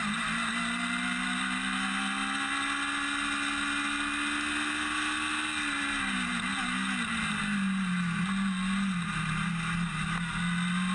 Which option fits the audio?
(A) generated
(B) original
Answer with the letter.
B